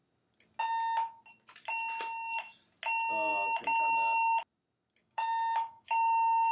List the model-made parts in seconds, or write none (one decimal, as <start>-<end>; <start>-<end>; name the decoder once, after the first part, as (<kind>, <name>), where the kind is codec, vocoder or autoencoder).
5.0-5.9 (codec, DAC)